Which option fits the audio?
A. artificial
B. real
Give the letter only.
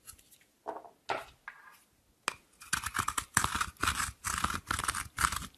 B